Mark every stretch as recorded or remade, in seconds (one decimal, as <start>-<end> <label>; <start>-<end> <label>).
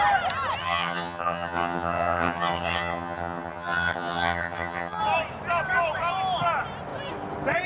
0.0-0.6 recorded; 0.6-5.0 remade; 5.0-7.7 recorded